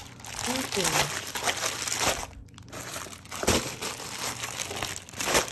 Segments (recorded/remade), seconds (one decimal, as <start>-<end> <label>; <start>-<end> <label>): 0.0-1.1 remade; 1.1-5.5 recorded